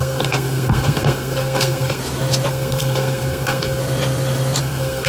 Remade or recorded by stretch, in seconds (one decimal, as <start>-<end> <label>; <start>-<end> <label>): 0.0-2.0 remade; 2.0-2.5 recorded; 2.5-3.8 remade; 3.8-4.6 recorded; 4.6-5.1 remade